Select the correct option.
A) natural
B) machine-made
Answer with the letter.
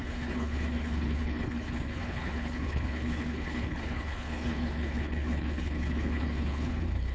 B